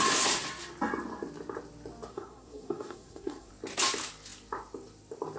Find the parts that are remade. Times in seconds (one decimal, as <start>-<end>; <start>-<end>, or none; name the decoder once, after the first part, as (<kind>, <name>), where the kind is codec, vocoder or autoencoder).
2.1-3.5 (codec, SNAC)